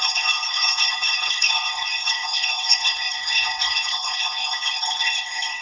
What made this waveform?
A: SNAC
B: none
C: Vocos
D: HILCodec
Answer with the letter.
D